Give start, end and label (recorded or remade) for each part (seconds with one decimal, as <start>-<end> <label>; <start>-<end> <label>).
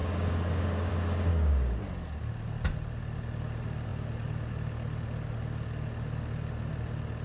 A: 0.0-0.9 remade; 0.9-1.3 recorded; 1.3-1.8 remade; 1.8-7.2 recorded